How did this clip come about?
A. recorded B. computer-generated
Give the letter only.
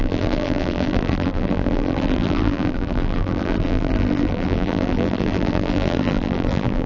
B